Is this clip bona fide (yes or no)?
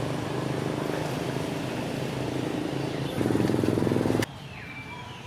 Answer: no